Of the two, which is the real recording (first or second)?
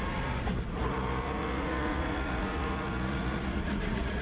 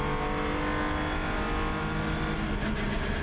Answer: second